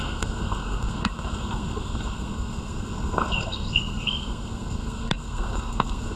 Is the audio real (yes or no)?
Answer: no